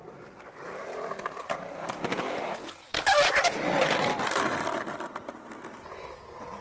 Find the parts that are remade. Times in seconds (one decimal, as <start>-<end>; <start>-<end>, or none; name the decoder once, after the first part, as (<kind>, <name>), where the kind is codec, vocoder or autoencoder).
none